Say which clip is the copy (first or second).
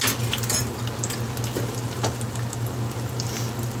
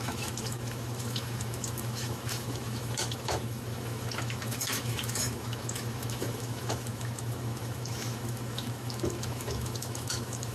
second